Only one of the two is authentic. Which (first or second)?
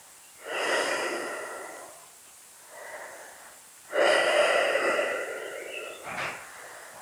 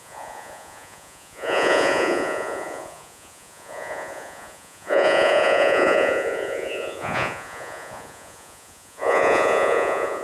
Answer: first